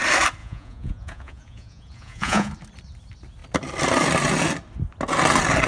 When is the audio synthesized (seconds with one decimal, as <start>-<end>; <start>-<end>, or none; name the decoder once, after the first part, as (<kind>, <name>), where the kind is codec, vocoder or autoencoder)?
0.4-2.5 (vocoder, Vocos)